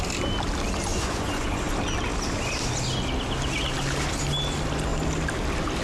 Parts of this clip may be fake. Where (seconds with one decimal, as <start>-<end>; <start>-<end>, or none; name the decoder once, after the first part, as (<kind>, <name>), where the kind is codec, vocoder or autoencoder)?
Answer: 0.9-1.7 (vocoder, Vocos)